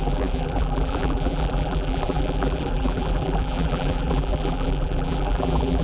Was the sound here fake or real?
fake